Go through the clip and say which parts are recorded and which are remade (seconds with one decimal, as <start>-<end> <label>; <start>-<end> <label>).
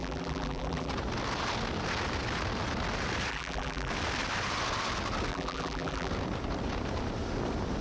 0.0-0.9 remade; 0.9-3.3 recorded; 3.3-3.9 remade; 3.9-5.3 recorded; 5.3-6.1 remade; 6.1-7.8 recorded